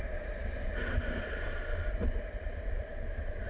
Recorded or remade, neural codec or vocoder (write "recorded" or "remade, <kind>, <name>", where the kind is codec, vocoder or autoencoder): remade, vocoder, BigVGAN v2